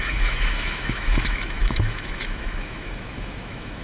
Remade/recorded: remade